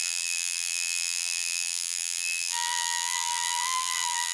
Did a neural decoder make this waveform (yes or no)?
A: yes